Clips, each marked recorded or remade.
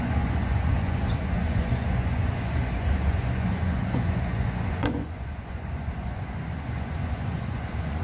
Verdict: remade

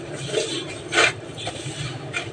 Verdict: recorded